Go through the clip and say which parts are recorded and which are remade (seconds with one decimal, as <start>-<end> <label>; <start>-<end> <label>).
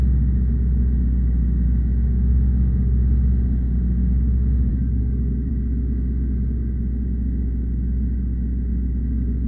0.0-4.7 recorded; 4.7-5.5 remade; 5.5-9.5 recorded